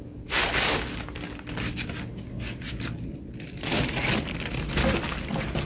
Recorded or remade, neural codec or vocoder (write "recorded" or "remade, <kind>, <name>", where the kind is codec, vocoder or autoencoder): recorded